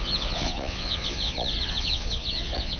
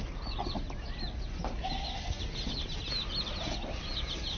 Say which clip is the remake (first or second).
first